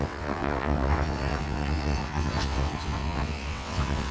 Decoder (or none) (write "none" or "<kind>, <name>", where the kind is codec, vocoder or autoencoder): vocoder, WaveNeXt